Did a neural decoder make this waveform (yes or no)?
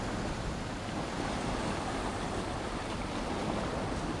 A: no